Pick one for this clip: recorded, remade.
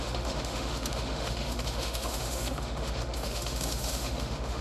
remade